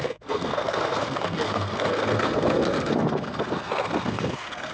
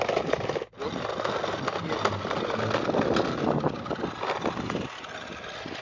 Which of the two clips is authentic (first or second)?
second